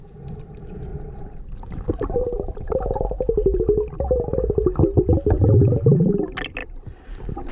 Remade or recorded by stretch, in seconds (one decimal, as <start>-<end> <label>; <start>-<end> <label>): 0.0-0.9 recorded; 0.9-3.6 remade; 3.6-6.6 recorded; 6.6-7.1 remade; 7.1-7.5 recorded